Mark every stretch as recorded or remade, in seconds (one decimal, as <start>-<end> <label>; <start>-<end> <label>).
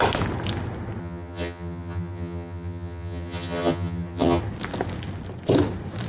0.0-1.0 recorded; 1.0-4.4 remade; 4.4-6.1 recorded